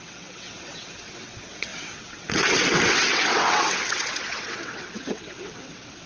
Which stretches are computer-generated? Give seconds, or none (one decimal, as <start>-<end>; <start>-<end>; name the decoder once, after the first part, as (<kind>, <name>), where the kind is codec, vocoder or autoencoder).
0.0-6.1 (vocoder, WaveNeXt)